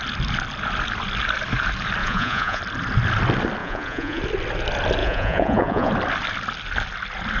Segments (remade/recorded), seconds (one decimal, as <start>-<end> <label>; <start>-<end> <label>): 0.0-2.0 recorded; 2.0-2.6 remade; 2.6-3.6 recorded; 3.6-4.2 remade; 4.2-5.0 recorded; 5.0-5.9 remade; 5.9-7.4 recorded